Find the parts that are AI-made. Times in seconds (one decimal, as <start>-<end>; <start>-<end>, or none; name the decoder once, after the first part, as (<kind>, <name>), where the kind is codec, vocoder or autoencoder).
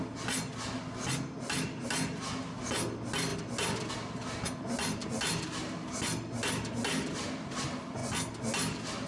none